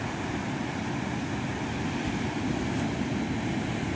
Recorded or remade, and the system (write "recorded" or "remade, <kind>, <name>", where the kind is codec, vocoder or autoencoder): recorded